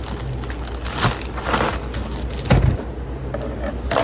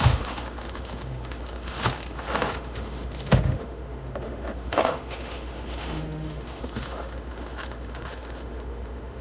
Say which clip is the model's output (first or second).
second